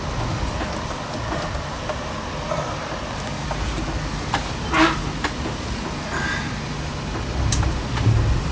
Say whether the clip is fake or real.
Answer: real